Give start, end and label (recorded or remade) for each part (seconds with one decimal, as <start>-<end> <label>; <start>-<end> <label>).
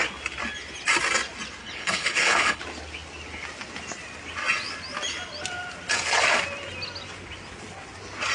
0.0-1.6 recorded; 1.6-2.6 remade; 2.6-8.3 recorded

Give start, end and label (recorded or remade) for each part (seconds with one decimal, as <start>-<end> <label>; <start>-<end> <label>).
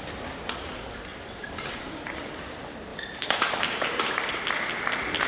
0.0-1.1 recorded; 1.1-2.3 remade; 2.3-2.9 recorded; 2.9-4.3 remade; 4.3-5.3 recorded